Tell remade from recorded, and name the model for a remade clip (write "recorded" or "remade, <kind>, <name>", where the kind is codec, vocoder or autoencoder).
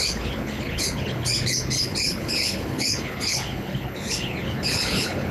remade, codec, HILCodec